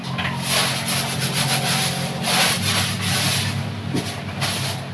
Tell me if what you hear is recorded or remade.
recorded